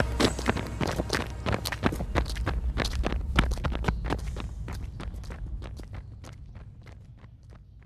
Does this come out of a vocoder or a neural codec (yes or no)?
no